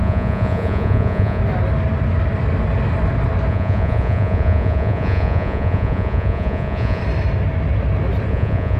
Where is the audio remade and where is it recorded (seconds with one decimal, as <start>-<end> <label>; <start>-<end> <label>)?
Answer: 0.0-1.4 remade; 1.4-3.5 recorded; 3.5-7.0 remade; 7.0-8.3 recorded; 8.3-8.8 remade